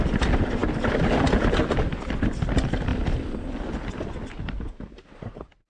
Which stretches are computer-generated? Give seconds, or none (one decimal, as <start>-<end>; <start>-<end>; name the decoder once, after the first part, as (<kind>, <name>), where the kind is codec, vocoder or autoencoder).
0.6-1.5 (vocoder, BigVGAN v2); 2.9-3.9

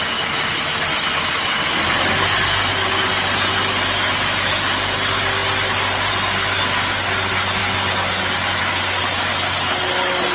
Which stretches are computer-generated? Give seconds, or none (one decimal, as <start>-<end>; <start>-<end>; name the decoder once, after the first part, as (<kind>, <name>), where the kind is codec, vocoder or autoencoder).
none

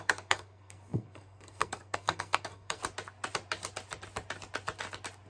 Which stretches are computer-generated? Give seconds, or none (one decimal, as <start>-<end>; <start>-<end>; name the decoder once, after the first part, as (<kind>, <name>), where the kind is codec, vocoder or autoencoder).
0.0-2.8 (codec, SNAC)

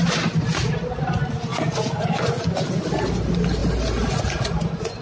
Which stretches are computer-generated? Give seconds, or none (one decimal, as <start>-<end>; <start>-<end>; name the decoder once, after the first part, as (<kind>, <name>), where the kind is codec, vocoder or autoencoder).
none

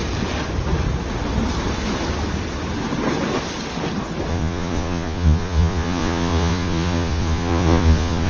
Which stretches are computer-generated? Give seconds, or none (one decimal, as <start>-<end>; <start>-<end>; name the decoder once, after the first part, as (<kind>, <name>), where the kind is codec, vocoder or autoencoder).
4.3-8.3 (vocoder, Vocos)

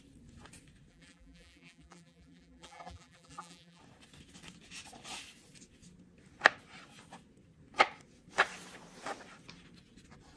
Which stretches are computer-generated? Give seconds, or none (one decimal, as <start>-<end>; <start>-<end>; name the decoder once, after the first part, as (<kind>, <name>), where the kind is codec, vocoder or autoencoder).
0.9-3.8 (vocoder, BigVGAN v2)

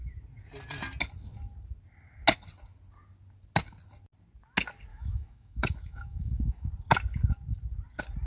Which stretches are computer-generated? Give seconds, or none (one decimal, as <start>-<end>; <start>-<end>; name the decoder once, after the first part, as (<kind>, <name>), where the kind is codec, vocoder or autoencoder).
4.9-6.7 (autoencoder, DAC-VAE)

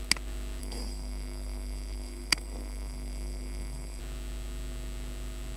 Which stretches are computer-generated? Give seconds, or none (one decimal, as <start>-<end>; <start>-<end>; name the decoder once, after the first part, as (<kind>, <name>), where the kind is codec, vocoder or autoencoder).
0.6-4.0 (codec, SNAC)